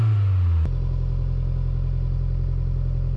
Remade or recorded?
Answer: recorded